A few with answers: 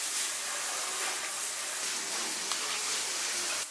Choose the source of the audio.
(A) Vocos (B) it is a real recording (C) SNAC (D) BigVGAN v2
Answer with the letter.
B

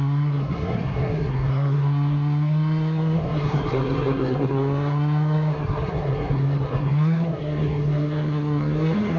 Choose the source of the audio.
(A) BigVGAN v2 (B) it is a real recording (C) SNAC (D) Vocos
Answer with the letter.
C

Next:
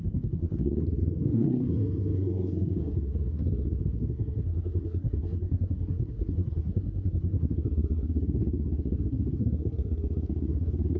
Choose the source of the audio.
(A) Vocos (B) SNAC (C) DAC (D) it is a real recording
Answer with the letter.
B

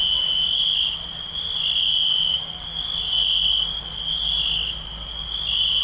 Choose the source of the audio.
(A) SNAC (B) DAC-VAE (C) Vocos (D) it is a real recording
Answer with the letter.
D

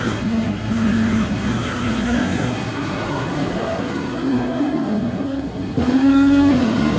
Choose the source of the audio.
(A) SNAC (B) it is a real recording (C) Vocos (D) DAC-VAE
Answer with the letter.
A